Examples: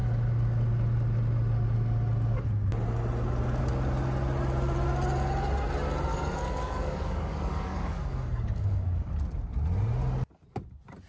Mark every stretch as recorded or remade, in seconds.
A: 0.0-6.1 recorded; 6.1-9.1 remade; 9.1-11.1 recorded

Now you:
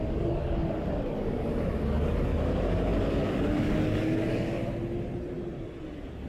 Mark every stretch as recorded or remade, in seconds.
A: 0.0-4.6 remade; 4.6-6.3 recorded

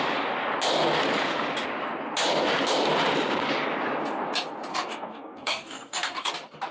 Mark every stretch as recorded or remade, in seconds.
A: 0.0-4.7 recorded; 4.7-6.3 remade; 6.3-6.7 recorded

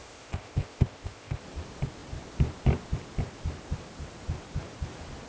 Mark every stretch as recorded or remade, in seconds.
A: 0.0-1.4 remade; 1.4-5.3 recorded

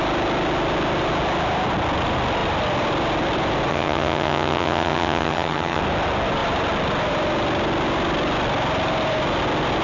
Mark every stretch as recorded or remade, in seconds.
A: 0.0-3.7 recorded; 3.7-5.8 remade; 5.8-9.8 recorded

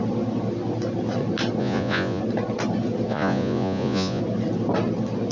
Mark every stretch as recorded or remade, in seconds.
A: 0.0-1.6 recorded; 1.6-2.2 remade; 2.2-3.1 recorded; 3.1-4.2 remade; 4.2-5.3 recorded

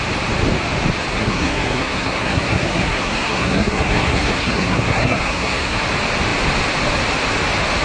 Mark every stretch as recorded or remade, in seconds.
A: 0.0-1.1 recorded; 1.1-5.8 remade; 5.8-7.8 recorded

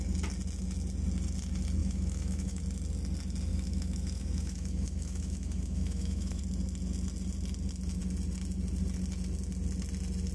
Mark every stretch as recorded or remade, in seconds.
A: 0.0-1.8 recorded; 1.8-2.6 remade; 2.6-3.5 recorded; 3.5-6.4 remade; 6.4-10.3 recorded